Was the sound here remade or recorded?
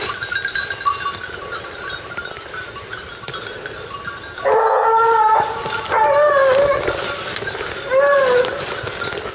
recorded